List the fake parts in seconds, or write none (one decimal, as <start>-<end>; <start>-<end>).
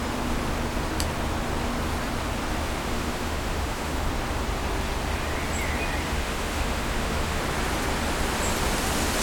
2.8-4.1; 6.1-7.4